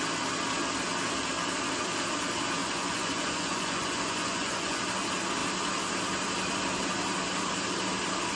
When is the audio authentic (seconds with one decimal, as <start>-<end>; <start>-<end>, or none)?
0.0-2.6; 4.8-8.4